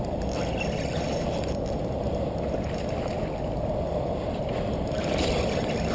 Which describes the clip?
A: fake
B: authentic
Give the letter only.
A